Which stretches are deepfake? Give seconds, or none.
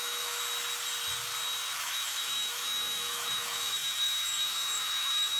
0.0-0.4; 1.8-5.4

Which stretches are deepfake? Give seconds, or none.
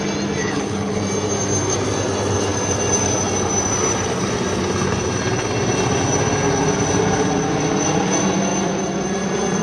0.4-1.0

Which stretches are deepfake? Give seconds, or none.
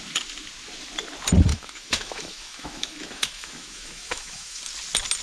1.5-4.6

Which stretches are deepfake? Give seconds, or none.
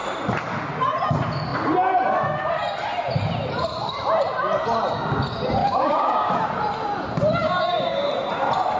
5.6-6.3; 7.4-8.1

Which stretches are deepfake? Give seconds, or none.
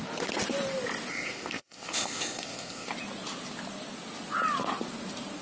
1.1-2.9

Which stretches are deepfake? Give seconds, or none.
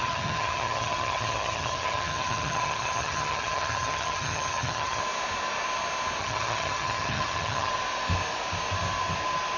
0.0-5.0; 6.2-7.7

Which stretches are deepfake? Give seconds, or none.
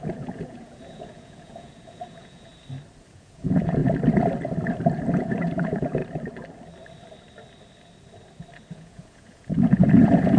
0.0-2.5; 3.1-3.8; 5.2-6.0; 8.7-10.4